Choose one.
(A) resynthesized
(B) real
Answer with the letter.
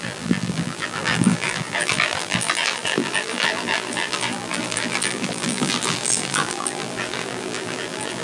A